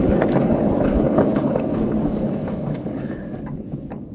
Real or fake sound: fake